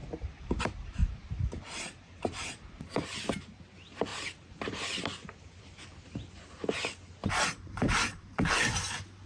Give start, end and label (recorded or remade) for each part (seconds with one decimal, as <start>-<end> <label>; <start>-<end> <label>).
0.0-0.6 remade; 0.6-1.0 recorded; 1.0-3.6 remade; 3.6-4.1 recorded; 4.1-5.6 remade; 5.6-7.2 recorded; 7.2-8.5 remade; 8.5-9.3 recorded